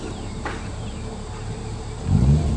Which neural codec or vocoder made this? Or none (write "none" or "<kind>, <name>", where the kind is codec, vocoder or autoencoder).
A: vocoder, BigVGAN v2